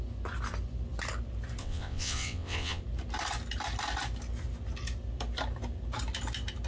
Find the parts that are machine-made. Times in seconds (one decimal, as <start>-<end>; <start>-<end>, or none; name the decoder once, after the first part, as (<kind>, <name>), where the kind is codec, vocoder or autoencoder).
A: 1.6-2.8 (vocoder, WaveNeXt)